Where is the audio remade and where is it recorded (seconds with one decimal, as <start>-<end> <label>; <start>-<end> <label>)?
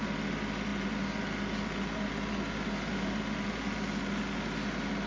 0.0-5.1 recorded